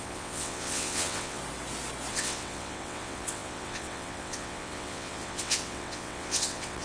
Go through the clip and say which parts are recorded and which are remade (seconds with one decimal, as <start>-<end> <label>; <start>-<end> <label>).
0.0-1.4 remade; 1.4-2.1 recorded; 2.1-6.8 remade